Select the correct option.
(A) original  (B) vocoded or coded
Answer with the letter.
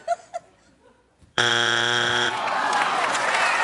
B